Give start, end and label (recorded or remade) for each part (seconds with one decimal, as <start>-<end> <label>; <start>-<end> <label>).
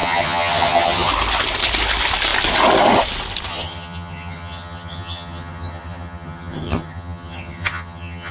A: 0.0-1.1 remade; 1.1-3.5 recorded; 3.5-8.3 remade